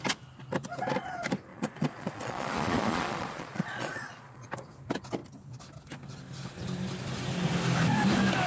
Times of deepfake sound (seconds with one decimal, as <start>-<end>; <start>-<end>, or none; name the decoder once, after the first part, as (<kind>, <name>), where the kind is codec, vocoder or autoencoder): 1.5-4.5 (vocoder, Vocos)

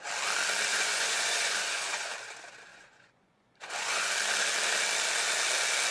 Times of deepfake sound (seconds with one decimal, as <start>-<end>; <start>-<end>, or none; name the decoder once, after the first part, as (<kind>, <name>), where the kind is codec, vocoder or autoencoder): 0.7-2.1 (vocoder, Vocos); 2.7-4.1

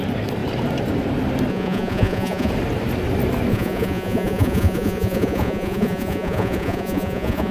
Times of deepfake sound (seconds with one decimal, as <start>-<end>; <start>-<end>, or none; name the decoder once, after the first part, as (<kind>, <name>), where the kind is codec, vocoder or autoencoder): 1.5-2.5 (vocoder, Vocos); 3.5-7.5

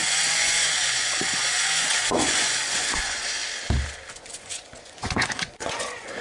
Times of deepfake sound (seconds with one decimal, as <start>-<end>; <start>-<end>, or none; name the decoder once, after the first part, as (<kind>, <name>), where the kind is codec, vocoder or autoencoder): 0.0-3.4 (vocoder, Vocos); 4.2-6.2

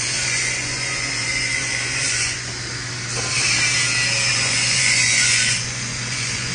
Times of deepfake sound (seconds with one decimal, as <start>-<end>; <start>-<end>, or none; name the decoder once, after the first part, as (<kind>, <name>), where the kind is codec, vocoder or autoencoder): 0.0-2.5 (vocoder, Vocos); 4.3-6.5